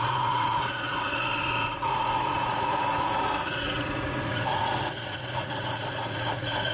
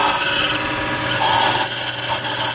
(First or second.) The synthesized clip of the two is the first